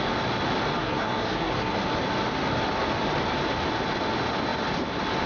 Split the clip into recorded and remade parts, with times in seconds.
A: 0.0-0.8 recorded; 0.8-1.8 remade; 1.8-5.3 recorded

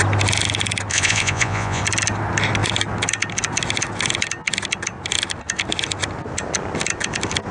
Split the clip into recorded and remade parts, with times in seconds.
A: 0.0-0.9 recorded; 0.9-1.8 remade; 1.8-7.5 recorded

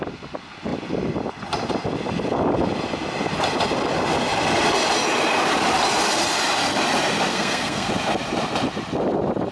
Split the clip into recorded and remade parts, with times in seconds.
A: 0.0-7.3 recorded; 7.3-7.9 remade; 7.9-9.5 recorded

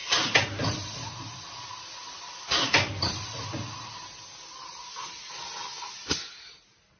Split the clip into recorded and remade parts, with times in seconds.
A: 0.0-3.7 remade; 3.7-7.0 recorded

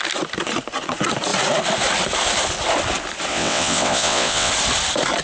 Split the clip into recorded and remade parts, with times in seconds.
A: 0.0-3.3 recorded; 3.3-4.5 remade; 4.5-5.2 recorded

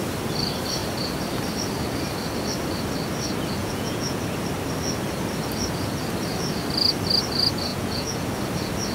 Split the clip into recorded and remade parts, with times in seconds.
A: 0.0-3.6 recorded; 3.6-4.2 remade; 4.2-7.7 recorded; 7.7-8.3 remade; 8.3-8.9 recorded

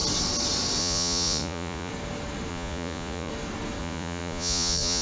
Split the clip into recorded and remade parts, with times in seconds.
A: 0.0-0.8 recorded; 0.8-1.9 remade; 1.9-2.5 recorded; 2.5-3.3 remade; 3.3-3.8 recorded; 3.8-5.0 remade

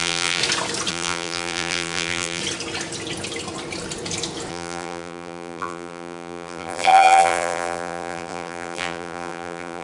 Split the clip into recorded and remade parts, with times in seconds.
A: 0.0-0.4 remade; 0.4-0.9 recorded; 0.9-2.4 remade; 2.4-4.5 recorded; 4.5-9.8 remade